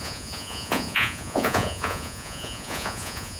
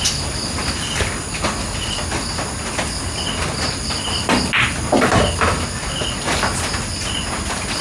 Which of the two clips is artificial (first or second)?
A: first